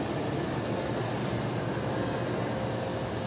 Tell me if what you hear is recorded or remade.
recorded